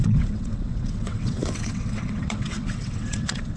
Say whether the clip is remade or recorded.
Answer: remade